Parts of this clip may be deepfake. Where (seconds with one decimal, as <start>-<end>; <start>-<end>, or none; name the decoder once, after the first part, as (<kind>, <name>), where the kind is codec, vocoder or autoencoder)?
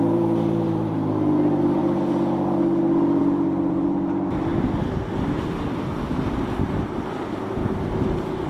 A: 0.0-1.8 (vocoder, BigVGAN v2); 3.2-4.5; 5.6-7.6